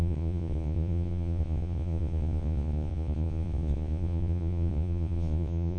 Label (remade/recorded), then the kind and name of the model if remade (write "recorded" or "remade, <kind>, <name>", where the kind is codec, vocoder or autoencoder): remade, vocoder, Vocos